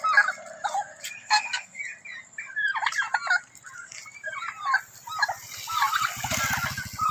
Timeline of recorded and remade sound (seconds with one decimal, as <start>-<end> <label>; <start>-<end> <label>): 0.0-1.2 recorded; 1.2-1.8 remade; 1.8-7.1 recorded